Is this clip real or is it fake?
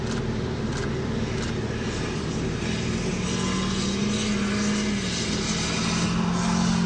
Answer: real